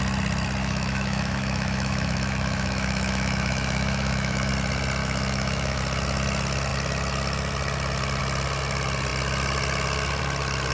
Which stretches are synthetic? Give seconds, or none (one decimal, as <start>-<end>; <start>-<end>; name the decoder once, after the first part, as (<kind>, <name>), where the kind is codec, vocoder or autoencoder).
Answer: 0.6-4.5 (autoencoder, DAC-VAE); 5.0-5.8